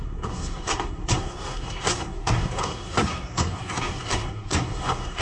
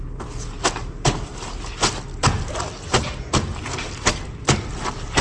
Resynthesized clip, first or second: first